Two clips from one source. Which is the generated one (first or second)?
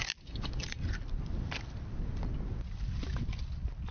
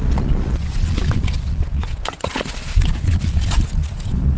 second